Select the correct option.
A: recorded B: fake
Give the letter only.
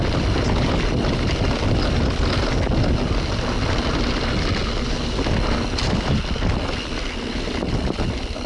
A